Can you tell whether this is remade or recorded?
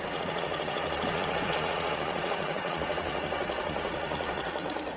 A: remade